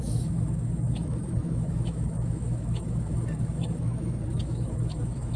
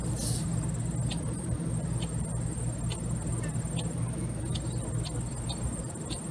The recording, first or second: second